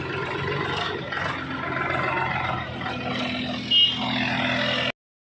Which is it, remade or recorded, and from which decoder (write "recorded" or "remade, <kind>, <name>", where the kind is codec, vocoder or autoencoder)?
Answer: recorded